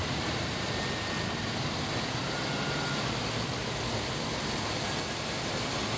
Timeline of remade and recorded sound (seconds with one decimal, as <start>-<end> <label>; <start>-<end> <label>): 0.0-0.9 remade; 0.9-6.0 recorded